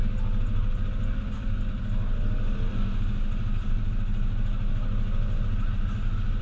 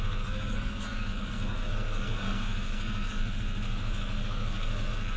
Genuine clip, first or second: first